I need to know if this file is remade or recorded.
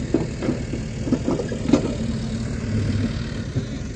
recorded